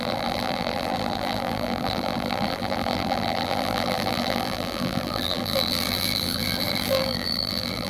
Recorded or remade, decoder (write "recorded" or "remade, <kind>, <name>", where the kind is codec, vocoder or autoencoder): remade, vocoder, BigVGAN v2